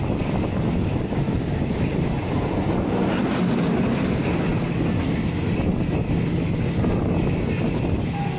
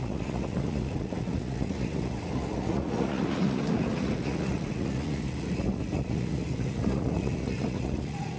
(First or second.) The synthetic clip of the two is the second